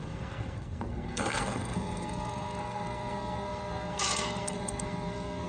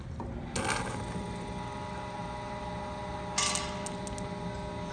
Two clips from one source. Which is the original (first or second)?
second